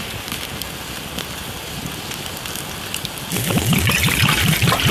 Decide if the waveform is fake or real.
real